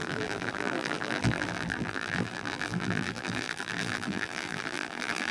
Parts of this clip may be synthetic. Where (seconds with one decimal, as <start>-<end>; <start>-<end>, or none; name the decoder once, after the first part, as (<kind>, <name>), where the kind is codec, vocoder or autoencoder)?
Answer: 0.0-5.3 (vocoder, BigVGAN v2)